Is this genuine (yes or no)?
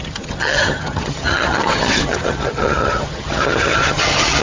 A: no